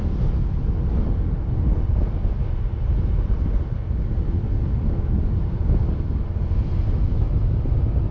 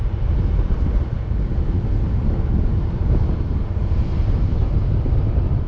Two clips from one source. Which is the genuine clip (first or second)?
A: first